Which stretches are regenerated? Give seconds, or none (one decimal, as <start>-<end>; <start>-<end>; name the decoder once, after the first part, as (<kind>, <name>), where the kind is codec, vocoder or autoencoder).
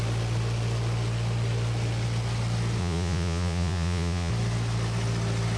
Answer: 2.8-4.3 (vocoder, Vocos)